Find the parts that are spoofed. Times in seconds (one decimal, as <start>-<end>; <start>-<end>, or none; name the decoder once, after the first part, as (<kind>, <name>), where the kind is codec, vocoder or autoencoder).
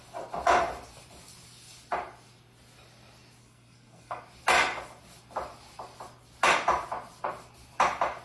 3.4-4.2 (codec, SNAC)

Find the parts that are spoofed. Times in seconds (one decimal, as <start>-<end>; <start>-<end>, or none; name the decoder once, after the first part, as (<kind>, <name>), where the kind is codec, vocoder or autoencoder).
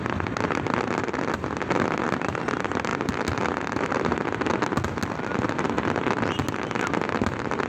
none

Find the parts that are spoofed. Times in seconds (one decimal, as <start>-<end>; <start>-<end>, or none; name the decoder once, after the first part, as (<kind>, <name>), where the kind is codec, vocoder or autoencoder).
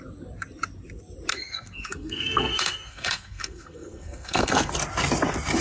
1.3-4.7 (codec, SNAC)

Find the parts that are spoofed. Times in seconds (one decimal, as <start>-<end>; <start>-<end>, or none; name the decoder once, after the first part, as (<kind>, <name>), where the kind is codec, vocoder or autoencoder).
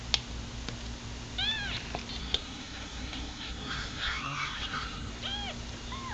2.2-5.1 (codec, SNAC)